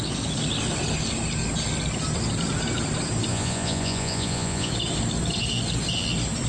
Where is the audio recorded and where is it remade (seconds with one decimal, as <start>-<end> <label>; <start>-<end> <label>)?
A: 0.0-3.3 recorded; 3.3-4.7 remade; 4.7-6.5 recorded